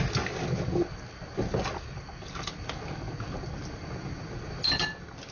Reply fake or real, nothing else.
real